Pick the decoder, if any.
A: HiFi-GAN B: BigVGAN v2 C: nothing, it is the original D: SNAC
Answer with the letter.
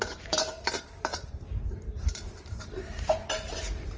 B